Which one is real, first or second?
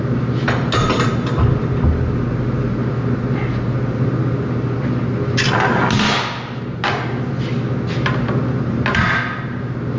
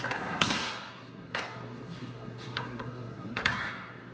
first